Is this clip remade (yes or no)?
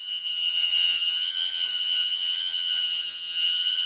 yes